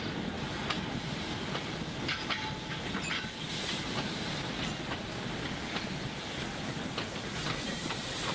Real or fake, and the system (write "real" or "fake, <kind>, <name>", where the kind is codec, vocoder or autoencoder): real